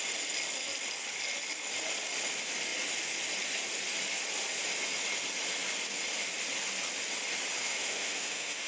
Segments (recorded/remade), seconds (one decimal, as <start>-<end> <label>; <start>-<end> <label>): 0.0-7.6 recorded; 7.6-8.7 remade